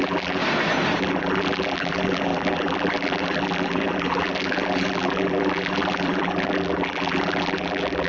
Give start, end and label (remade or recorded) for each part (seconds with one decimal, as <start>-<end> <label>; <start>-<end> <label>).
0.0-0.4 remade; 0.4-1.0 recorded; 1.0-8.1 remade